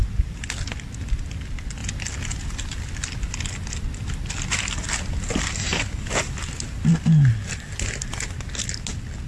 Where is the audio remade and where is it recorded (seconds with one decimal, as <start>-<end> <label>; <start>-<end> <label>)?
0.0-9.3 recorded